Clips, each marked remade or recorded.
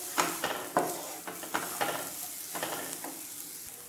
recorded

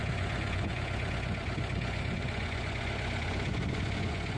remade